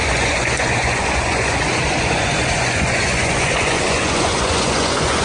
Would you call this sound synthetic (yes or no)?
yes